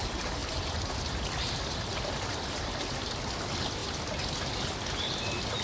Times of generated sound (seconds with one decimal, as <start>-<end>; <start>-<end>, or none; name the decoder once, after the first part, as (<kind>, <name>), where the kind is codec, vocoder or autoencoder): 0.4-2.3 (vocoder, BigVGAN v2)